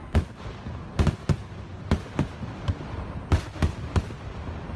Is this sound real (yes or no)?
yes